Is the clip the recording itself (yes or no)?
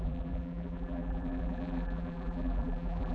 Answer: no